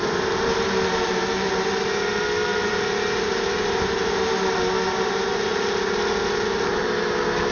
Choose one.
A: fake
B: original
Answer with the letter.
A